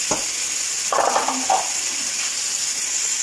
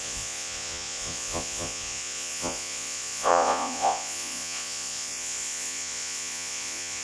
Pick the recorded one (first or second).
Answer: first